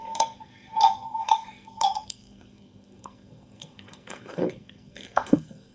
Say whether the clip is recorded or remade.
remade